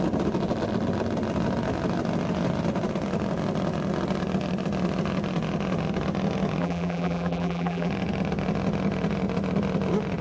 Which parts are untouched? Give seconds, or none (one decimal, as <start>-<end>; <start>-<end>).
0.0-6.6; 7.9-10.2